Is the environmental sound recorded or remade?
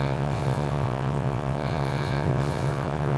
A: remade